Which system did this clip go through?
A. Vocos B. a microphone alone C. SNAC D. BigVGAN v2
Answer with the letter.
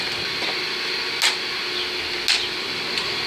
B